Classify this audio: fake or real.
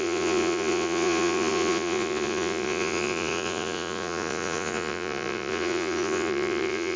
fake